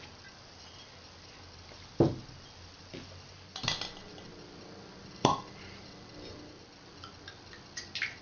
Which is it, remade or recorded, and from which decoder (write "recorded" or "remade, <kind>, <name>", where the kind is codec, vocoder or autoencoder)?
recorded